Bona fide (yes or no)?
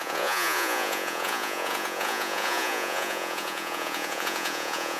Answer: no